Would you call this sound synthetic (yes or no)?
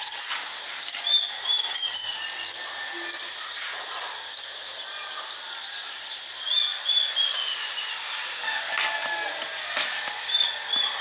no